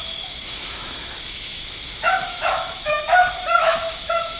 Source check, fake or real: fake